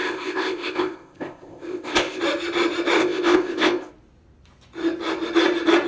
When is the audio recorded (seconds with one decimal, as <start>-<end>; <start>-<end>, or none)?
2.2-3.0; 3.9-5.9